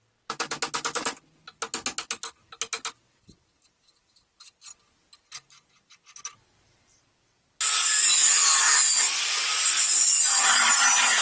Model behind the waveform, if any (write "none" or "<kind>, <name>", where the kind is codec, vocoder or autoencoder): none